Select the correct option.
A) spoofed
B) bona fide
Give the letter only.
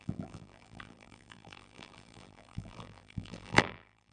A